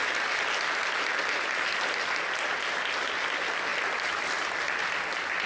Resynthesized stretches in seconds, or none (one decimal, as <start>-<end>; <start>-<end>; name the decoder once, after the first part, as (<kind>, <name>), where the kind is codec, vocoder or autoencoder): none